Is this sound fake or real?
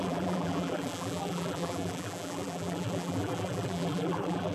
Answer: fake